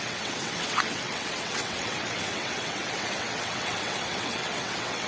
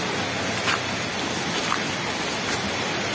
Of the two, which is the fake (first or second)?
first